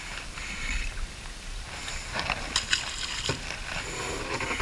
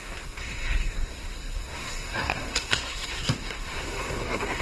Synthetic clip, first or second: second